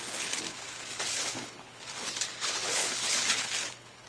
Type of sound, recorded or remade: remade